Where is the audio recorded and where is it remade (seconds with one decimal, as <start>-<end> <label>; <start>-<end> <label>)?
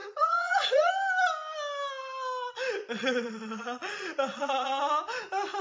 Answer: 0.0-0.9 remade; 0.9-2.8 recorded; 2.8-4.8 remade; 4.8-5.6 recorded